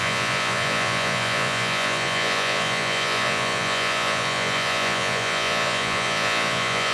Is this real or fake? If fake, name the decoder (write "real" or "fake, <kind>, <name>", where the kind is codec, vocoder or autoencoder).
fake, vocoder, Vocos